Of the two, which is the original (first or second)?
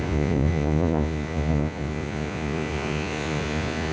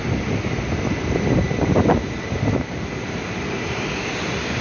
second